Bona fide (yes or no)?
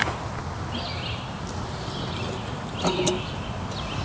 yes